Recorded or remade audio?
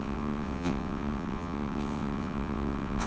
remade